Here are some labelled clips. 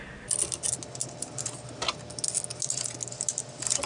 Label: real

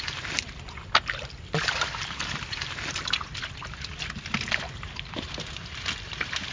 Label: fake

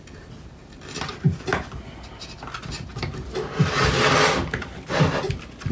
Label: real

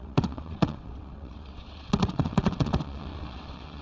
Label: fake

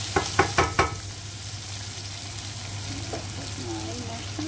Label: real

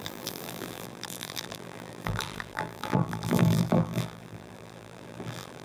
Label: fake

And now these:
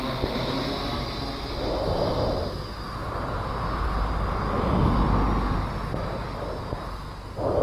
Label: real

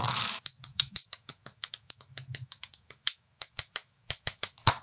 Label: fake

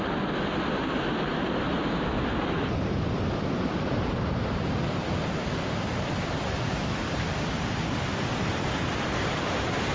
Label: real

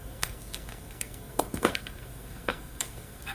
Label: fake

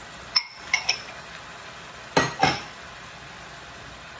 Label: real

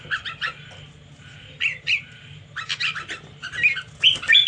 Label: real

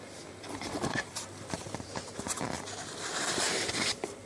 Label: fake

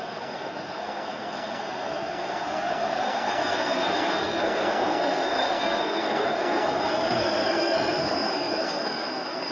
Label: fake